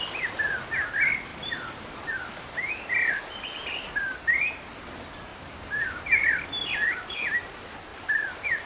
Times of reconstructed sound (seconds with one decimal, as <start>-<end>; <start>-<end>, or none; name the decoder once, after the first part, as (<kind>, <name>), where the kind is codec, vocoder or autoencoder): 1.3-2.7 (vocoder, BigVGAN v2); 5.3-7.1; 7.9-8.7

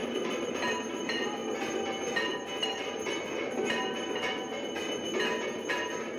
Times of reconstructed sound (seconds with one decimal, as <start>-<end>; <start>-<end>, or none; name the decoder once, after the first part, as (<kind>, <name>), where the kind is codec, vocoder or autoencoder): 0.0-0.5 (vocoder, BigVGAN v2)

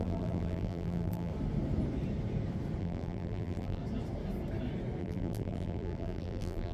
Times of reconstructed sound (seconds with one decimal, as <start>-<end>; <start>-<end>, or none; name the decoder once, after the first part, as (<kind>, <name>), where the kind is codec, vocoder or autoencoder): 0.0-1.3 (vocoder, BigVGAN v2); 2.8-3.8; 5.0-6.7

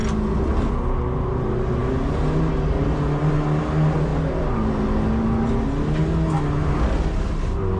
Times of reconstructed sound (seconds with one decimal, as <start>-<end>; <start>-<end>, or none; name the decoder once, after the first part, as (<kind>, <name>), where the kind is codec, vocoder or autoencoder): none

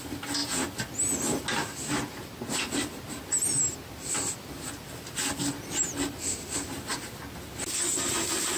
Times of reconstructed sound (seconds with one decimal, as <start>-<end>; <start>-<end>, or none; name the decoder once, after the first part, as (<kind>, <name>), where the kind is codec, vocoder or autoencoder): none

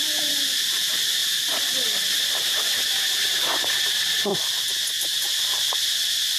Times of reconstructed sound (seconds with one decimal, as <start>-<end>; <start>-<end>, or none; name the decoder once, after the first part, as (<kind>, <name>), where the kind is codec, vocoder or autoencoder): 0.0-1.2 (vocoder, BigVGAN v2); 2.3-4.3; 5.0-6.4

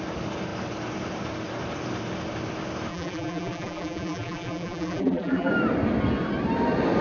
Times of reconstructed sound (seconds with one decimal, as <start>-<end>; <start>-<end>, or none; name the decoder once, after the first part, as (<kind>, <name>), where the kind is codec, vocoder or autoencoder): 2.9-5.5 (vocoder, BigVGAN v2)

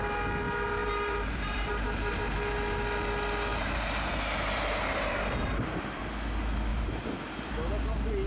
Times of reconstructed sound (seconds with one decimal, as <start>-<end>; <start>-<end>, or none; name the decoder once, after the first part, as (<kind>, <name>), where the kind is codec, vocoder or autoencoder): 0.8-2.2 (vocoder, BigVGAN v2); 3.5-6.0; 6.7-7.5